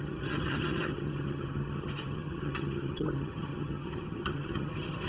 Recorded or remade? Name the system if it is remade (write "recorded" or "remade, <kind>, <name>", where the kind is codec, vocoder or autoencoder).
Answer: remade, vocoder, HiFi-GAN